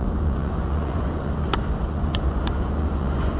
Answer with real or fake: fake